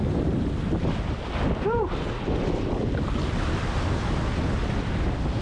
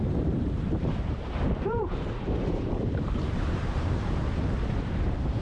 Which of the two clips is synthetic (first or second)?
second